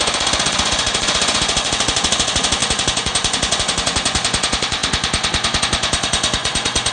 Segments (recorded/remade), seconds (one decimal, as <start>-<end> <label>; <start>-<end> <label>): 0.0-6.9 remade